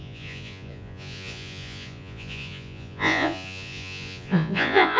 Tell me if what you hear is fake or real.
fake